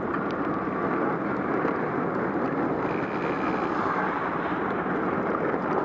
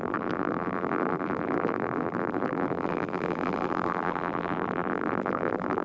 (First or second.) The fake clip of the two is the second